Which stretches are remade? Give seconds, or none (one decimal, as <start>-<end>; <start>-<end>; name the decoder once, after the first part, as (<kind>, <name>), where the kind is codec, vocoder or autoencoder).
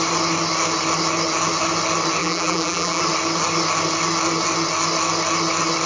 2.2-3.0 (vocoder, BigVGAN v2)